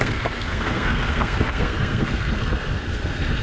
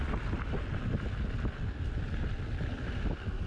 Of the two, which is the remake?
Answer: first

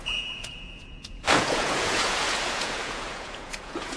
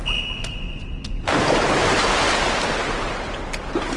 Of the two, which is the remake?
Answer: first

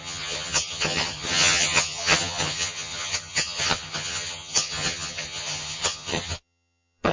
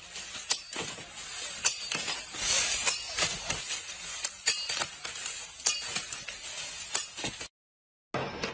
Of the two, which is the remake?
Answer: first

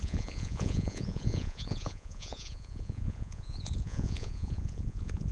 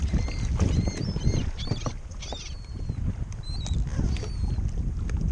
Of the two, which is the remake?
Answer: first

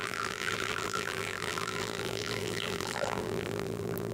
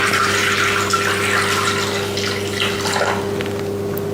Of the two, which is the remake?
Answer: first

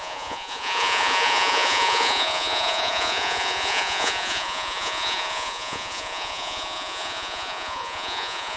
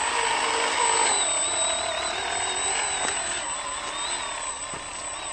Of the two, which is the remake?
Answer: first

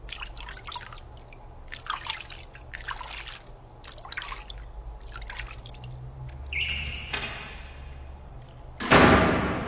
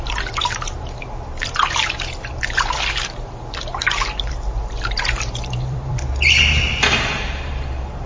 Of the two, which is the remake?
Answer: second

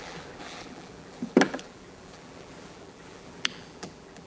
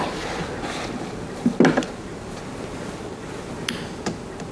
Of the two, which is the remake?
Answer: first